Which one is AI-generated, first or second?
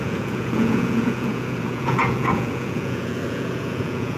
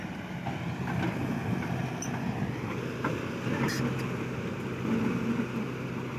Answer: first